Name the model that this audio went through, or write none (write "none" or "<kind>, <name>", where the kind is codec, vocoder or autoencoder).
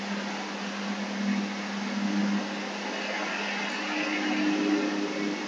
none